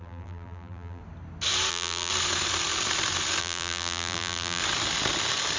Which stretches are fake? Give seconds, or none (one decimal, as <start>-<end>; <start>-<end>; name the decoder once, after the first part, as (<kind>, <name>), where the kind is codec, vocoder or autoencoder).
0.0-1.0 (vocoder, BigVGAN v2); 1.7-2.1; 3.4-4.6